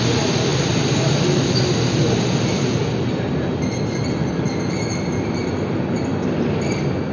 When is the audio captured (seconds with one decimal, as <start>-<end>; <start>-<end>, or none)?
0.0-7.1